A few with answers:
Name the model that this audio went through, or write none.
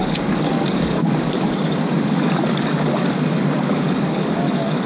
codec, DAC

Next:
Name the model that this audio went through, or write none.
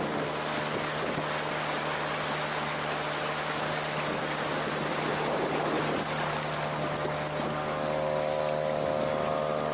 none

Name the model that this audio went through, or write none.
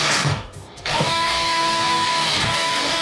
codec, DAC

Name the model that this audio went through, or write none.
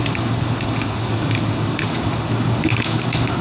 codec, DAC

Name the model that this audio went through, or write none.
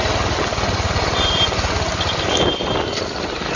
none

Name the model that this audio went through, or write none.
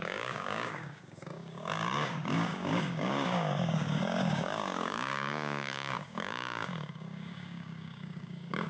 codec, DAC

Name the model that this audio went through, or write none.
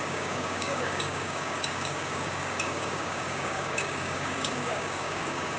codec, DAC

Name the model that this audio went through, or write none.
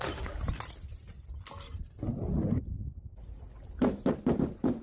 none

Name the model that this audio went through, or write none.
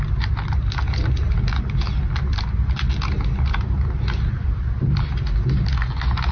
none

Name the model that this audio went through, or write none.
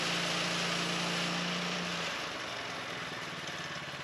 none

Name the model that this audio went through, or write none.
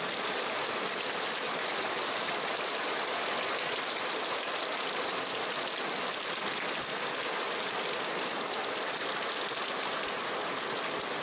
none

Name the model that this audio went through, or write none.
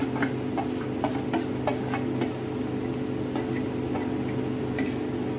none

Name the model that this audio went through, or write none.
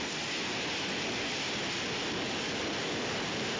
none